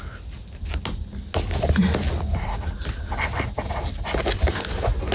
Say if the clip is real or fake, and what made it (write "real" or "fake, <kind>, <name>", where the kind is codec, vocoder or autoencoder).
real